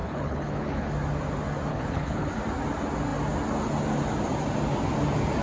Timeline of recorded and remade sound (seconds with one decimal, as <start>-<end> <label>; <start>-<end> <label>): 0.0-0.9 remade; 0.9-1.7 recorded; 1.7-2.3 remade; 2.3-5.4 recorded